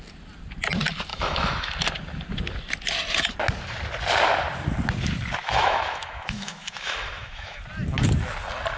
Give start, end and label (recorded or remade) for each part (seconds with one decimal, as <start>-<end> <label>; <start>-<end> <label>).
0.0-1.1 recorded; 1.1-1.7 remade; 1.7-5.4 recorded; 5.4-7.6 remade; 7.6-8.8 recorded